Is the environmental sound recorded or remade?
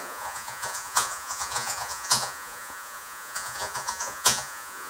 remade